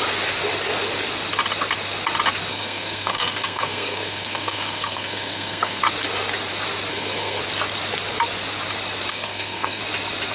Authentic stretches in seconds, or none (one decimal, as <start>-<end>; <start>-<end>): 0.0-2.5; 5.8-6.9; 7.4-9.1; 9.8-10.3